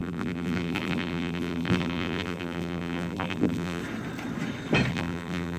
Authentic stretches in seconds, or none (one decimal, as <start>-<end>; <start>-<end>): 3.8-4.9